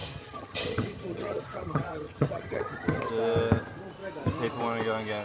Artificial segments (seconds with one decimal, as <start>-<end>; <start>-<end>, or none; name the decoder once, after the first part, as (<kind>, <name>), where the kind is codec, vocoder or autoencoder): 0.0-3.1 (vocoder, HiFi-GAN)

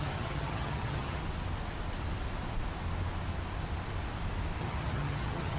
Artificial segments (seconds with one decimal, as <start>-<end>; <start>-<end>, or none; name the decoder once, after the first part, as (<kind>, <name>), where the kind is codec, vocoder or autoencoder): 0.0-1.2 (vocoder, HiFi-GAN); 4.6-5.6

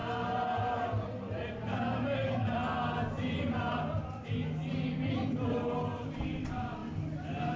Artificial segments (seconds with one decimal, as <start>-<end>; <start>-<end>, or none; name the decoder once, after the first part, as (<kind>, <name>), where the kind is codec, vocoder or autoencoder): none